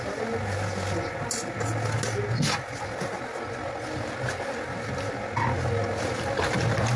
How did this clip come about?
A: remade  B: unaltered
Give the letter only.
B